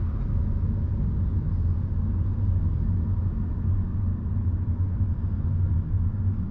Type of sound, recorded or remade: recorded